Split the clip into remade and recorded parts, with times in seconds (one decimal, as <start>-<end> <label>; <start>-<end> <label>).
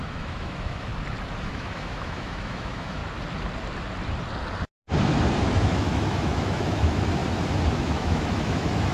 0.0-0.9 remade; 0.9-1.4 recorded; 1.4-3.0 remade; 3.0-5.4 recorded; 5.4-7.2 remade; 7.2-7.7 recorded; 7.7-8.9 remade